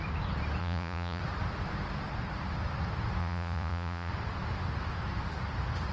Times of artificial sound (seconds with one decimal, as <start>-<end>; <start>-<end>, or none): 0.6-1.2; 3.2-4.1